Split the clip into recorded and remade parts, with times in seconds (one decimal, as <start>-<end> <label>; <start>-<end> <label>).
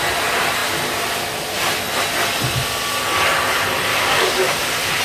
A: 0.0-3.9 recorded; 3.9-4.5 remade; 4.5-5.0 recorded